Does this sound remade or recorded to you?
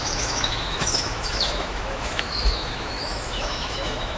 remade